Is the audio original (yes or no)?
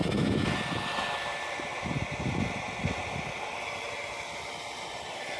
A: yes